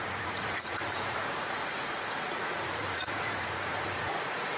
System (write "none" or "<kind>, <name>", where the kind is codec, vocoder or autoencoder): vocoder, Vocos